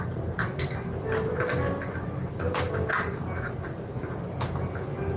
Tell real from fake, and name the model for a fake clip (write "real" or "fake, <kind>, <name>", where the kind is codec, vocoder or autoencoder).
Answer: real